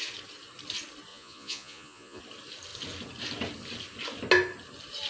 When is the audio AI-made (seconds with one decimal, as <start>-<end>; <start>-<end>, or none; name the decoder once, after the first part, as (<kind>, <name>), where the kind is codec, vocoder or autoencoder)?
1.1-2.2 (vocoder, Vocos)